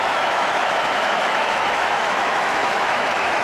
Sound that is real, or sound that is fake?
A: fake